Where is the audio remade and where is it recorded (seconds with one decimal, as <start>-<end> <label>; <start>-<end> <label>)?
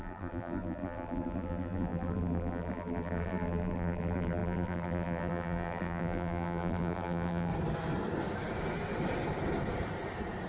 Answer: 0.0-7.5 remade; 7.5-10.5 recorded